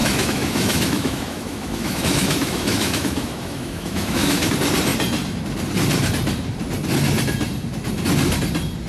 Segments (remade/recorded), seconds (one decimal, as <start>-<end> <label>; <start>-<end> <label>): 0.0-4.5 remade; 4.5-8.9 recorded